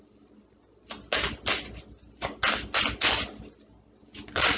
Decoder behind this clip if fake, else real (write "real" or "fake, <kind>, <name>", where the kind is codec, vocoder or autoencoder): real